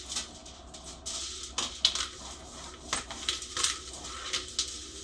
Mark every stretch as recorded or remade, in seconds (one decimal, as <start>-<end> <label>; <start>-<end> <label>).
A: 0.0-5.0 recorded

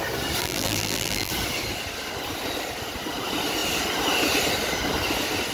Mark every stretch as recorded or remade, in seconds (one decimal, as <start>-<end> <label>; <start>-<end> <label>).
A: 0.0-0.4 recorded; 0.4-1.3 remade; 1.3-5.5 recorded

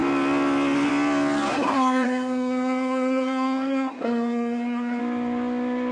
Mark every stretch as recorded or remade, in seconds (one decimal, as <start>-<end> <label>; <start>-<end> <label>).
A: 0.0-1.5 recorded; 1.5-5.0 remade; 5.0-5.9 recorded

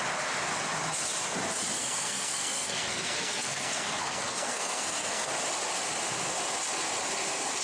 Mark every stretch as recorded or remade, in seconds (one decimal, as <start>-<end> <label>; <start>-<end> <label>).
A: 0.0-1.8 recorded; 1.8-5.3 remade; 5.3-7.6 recorded